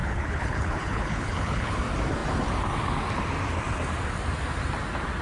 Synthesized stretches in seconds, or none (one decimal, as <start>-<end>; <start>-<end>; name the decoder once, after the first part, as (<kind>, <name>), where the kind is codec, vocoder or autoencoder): 0.0-1.8 (codec, HILCodec)